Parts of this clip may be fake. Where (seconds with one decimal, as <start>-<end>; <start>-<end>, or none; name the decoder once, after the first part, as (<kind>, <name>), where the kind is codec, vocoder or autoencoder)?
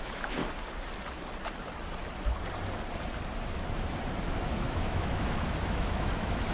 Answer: 0.0-0.4 (autoencoder, DAC-VAE); 4.3-6.5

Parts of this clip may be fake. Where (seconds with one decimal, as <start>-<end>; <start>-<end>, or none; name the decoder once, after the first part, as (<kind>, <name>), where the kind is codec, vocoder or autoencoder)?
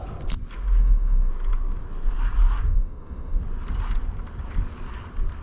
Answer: 0.8-1.3 (autoencoder, DAC-VAE); 2.7-3.4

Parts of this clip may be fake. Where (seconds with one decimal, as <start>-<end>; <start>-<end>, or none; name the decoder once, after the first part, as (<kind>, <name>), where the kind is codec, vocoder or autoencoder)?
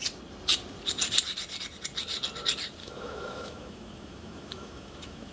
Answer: 2.8-5.3 (autoencoder, DAC-VAE)